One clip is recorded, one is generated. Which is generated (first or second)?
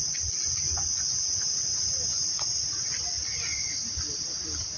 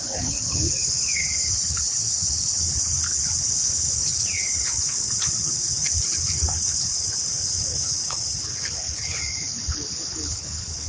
second